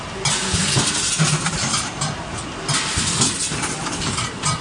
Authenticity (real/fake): real